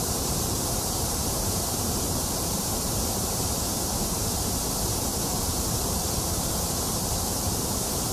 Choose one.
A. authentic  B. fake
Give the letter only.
B